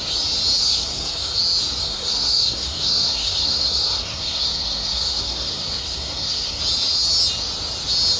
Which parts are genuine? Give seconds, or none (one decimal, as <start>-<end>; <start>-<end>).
0.0-0.6; 1.4-1.8; 6.6-8.2